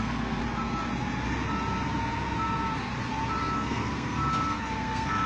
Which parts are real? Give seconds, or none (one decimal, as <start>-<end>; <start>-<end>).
0.4-3.4